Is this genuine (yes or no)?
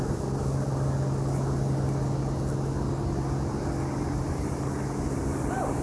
yes